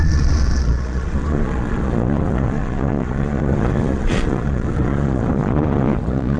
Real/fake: fake